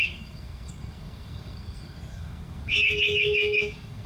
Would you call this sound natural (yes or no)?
no